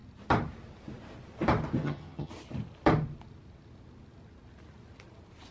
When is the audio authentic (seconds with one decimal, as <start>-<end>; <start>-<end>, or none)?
0.0-1.8; 2.3-5.5